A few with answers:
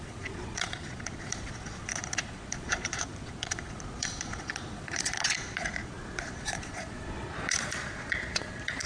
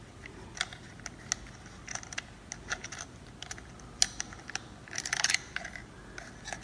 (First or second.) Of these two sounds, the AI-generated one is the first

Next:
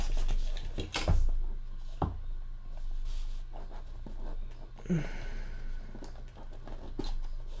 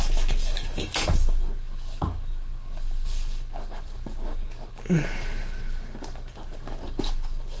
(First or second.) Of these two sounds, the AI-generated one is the second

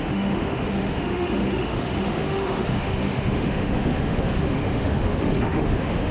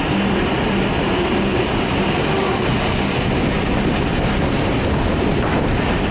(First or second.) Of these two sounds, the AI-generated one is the first